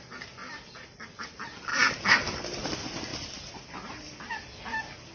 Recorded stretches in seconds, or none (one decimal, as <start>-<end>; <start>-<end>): 0.0-5.1